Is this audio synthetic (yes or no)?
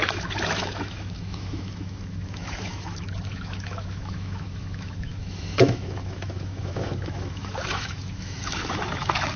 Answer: yes